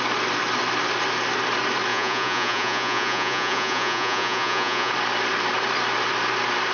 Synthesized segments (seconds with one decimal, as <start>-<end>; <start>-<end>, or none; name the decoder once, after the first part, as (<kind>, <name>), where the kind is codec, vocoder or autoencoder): 1.9-4.9 (vocoder, Vocos)